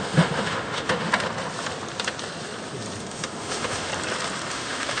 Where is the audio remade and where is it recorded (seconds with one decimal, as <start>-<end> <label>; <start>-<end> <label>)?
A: 0.0-1.1 remade; 1.1-3.0 recorded; 3.0-3.9 remade; 3.9-4.5 recorded; 4.5-5.0 remade